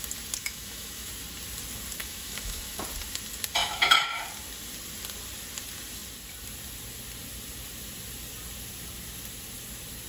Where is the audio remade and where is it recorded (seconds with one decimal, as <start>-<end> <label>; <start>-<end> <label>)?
0.0-0.4 recorded; 0.4-1.1 remade; 1.1-2.0 recorded; 2.0-2.8 remade; 2.8-3.6 recorded; 3.6-4.2 remade; 4.2-10.1 recorded